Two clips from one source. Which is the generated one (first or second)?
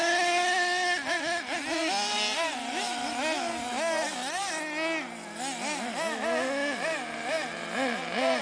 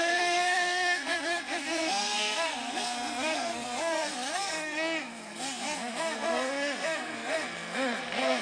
second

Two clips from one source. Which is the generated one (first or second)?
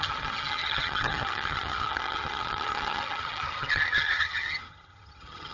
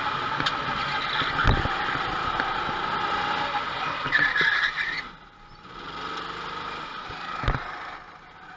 first